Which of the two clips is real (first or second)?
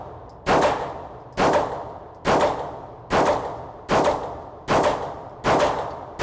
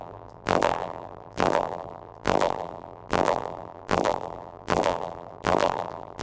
first